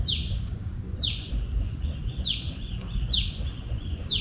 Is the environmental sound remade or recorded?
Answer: remade